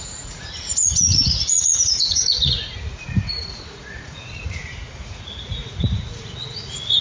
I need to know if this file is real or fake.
fake